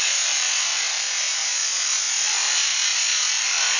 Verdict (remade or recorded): recorded